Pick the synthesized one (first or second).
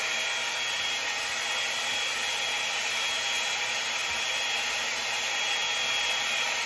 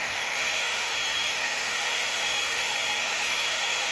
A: second